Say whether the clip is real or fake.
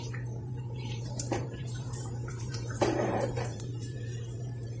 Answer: fake